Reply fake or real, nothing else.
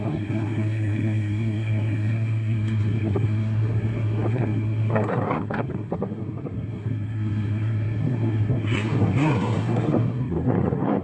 fake